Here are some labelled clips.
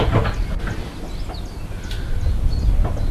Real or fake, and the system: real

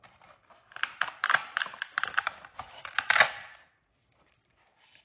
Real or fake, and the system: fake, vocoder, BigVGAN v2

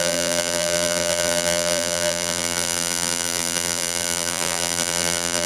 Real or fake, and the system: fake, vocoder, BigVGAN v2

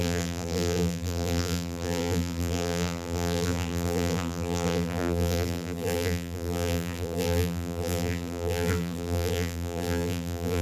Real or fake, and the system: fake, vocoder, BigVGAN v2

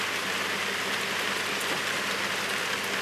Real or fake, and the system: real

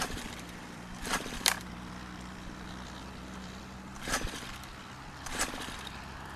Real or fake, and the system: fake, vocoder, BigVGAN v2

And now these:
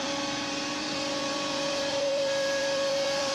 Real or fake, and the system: fake, vocoder, BigVGAN v2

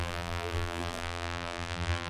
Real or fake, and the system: fake, vocoder, BigVGAN v2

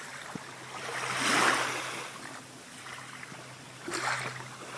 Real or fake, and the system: real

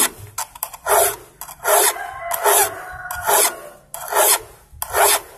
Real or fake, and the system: real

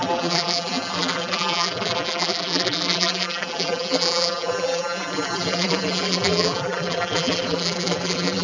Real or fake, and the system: fake, vocoder, BigVGAN v2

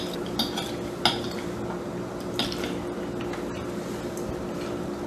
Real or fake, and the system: real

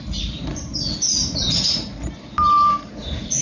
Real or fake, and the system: fake, vocoder, BigVGAN v2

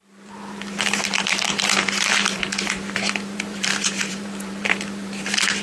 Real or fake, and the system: fake, vocoder, BigVGAN v2